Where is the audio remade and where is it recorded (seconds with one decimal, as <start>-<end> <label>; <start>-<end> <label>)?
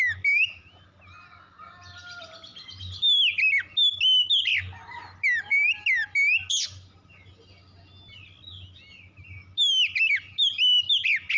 0.0-11.4 recorded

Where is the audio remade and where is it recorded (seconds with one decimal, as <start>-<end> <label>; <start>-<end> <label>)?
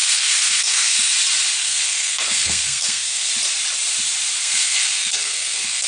0.0-1.1 remade; 1.1-1.6 recorded; 1.6-3.3 remade; 3.3-4.4 recorded; 4.4-5.9 remade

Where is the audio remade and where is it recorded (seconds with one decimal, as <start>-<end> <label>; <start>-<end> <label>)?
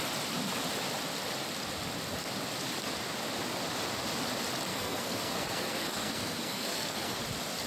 0.0-4.7 recorded; 4.7-7.2 remade; 7.2-7.7 recorded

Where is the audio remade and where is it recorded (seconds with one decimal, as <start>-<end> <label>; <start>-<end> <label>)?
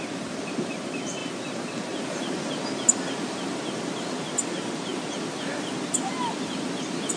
0.0-7.2 recorded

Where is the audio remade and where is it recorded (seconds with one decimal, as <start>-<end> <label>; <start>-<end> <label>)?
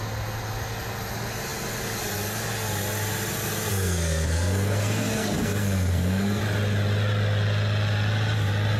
0.0-3.7 recorded; 3.7-6.4 remade; 6.4-8.8 recorded